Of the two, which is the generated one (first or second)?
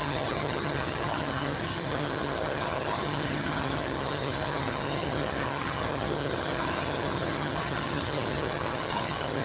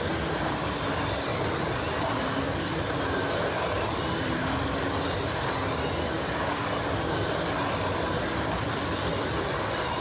first